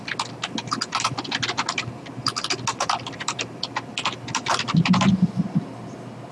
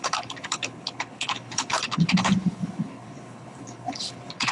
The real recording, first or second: first